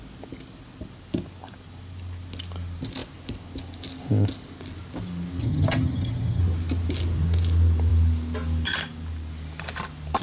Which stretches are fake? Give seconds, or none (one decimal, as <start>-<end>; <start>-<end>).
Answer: 5.4-6.4